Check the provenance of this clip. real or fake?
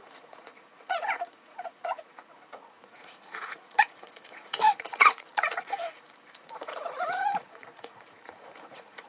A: fake